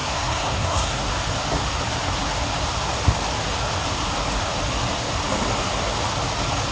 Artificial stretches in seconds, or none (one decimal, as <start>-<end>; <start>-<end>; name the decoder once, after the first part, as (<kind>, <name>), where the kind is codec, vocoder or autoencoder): 0.0-1.1 (codec, SNAC)